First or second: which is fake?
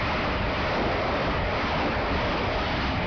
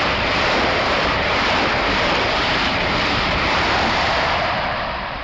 second